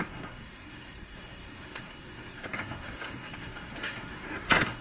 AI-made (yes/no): yes